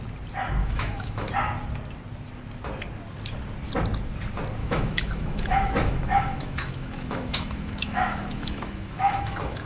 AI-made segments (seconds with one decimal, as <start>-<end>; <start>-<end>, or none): 0.6-1.3; 4.6-9.7